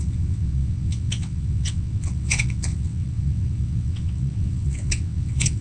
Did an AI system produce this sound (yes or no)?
yes